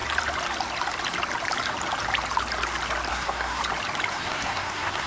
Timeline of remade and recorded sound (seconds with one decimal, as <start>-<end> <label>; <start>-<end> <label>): 0.0-3.1 recorded; 3.1-3.6 remade; 3.6-4.1 recorded; 4.1-5.1 remade